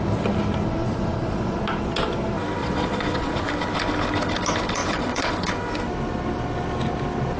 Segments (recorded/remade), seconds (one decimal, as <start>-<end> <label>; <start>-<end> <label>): 0.0-0.8 recorded; 0.8-1.6 remade; 1.6-2.6 recorded; 2.6-3.5 remade; 3.5-4.8 recorded; 4.8-5.5 remade; 5.5-7.4 recorded